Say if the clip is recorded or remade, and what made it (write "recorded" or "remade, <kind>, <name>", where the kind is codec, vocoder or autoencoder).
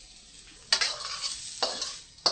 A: recorded